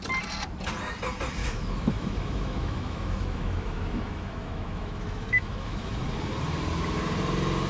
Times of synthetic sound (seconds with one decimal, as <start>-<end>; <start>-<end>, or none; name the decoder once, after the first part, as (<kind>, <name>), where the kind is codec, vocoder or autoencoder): 1.4-6.0 (autoencoder, DAC-VAE)